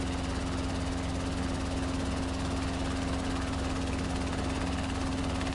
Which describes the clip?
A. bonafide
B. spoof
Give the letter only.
A